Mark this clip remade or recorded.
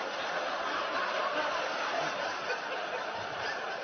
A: recorded